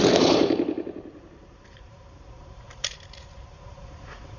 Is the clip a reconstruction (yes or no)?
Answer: yes